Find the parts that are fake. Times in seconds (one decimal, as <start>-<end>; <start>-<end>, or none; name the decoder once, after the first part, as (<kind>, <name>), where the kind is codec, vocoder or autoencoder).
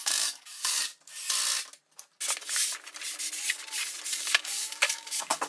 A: 0.0-0.9 (codec, DAC); 4.2-5.5